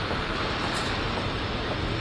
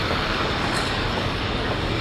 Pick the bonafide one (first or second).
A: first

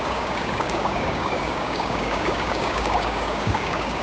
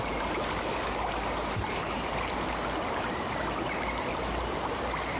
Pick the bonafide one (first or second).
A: second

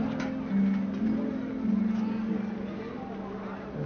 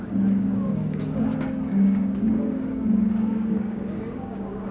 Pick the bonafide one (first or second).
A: first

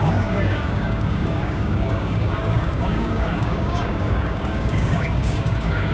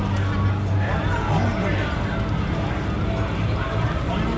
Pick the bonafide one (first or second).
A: second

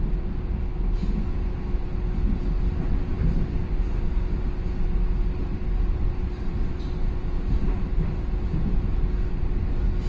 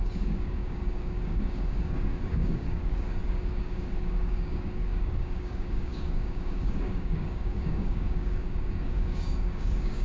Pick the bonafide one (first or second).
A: first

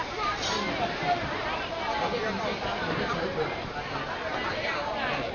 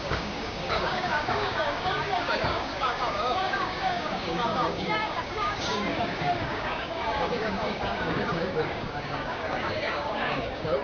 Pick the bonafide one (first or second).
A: first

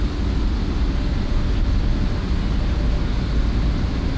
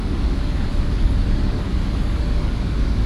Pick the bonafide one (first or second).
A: first